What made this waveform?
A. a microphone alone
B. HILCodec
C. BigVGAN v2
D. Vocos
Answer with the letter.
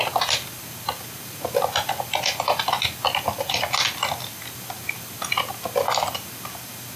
A